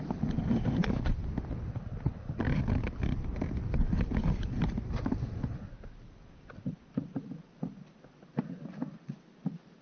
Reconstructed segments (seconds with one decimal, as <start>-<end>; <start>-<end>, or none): none